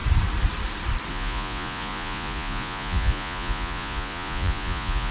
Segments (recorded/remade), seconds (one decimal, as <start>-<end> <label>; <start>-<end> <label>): 0.0-1.1 recorded; 1.1-5.1 remade